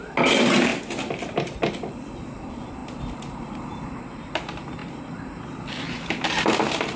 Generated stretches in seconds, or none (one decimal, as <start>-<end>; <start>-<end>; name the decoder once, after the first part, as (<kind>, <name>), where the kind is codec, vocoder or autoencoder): none